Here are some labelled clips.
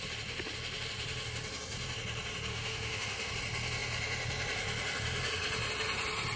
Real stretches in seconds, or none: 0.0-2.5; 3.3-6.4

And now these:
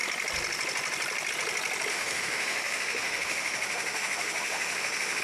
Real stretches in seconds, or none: 0.0-1.9

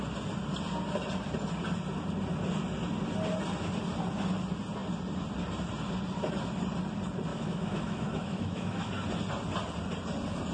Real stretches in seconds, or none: 0.0-7.3; 8.9-10.5

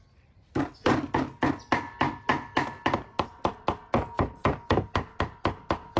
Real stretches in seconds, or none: 0.0-6.0

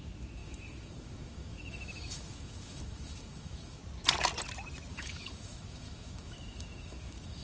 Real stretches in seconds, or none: 3.8-4.9

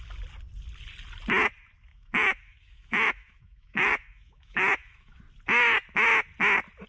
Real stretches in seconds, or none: 0.0-1.9; 5.2-6.9

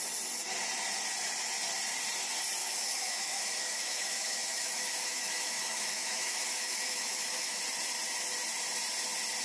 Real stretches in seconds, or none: 0.0-2.6; 7.6-9.4